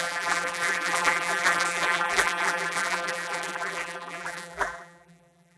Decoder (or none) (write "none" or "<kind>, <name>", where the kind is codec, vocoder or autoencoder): vocoder, BigVGAN v2